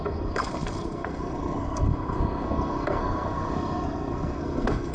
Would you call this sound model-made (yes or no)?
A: yes